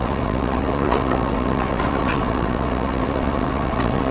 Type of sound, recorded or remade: remade